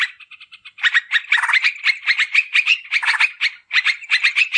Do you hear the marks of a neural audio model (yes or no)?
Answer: no